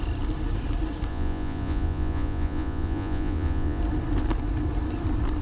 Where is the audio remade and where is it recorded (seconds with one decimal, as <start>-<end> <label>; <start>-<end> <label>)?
0.0-1.1 recorded; 1.1-3.8 remade; 3.8-5.4 recorded